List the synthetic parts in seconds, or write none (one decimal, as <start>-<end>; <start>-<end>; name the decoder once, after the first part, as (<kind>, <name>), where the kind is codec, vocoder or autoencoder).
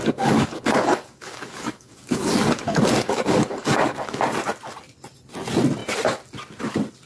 0.0-4.2 (codec, DAC)